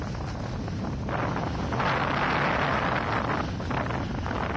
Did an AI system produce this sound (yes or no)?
no